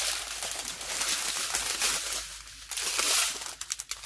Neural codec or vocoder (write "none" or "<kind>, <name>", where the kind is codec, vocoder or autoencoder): none